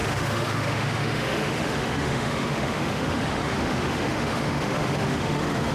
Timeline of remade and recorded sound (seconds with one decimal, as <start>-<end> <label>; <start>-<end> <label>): 0.0-5.7 remade